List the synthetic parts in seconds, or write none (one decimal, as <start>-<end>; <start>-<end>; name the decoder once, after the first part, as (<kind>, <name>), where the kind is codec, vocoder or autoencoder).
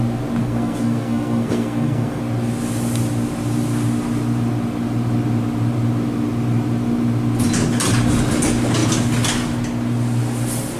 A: 0.4-2.2 (codec, SNAC)